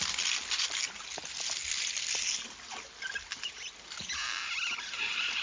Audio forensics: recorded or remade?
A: recorded